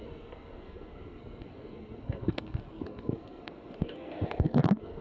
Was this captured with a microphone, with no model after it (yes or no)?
no